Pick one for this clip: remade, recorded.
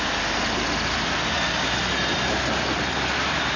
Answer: recorded